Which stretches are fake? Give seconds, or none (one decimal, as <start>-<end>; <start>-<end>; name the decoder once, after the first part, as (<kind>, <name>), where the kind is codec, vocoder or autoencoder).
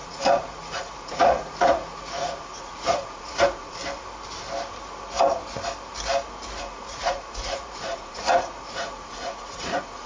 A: 0.0-3.8 (vocoder, Vocos); 6.6-10.1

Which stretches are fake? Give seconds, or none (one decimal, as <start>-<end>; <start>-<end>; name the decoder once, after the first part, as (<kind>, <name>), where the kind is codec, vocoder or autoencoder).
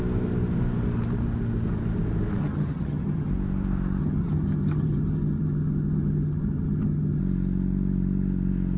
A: 2.4-3.3 (vocoder, HiFi-GAN); 4.0-7.2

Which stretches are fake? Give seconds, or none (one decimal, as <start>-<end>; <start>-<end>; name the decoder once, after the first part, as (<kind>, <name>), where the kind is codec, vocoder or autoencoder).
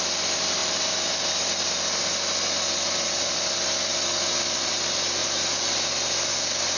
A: none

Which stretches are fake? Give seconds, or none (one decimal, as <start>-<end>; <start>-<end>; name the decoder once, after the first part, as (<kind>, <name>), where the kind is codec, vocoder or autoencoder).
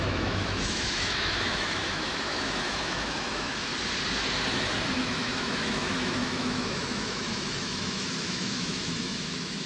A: 0.0-3.7 (autoencoder, DAC-VAE); 4.9-9.7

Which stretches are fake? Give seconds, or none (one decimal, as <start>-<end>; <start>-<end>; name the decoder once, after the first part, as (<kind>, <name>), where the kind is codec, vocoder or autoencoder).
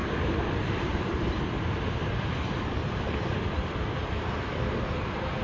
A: 0.0-1.7 (vocoder, BigVGAN v2); 2.8-4.1